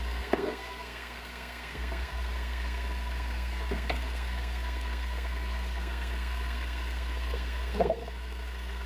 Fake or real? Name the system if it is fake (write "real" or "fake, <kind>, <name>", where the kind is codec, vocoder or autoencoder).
fake, codec, SNAC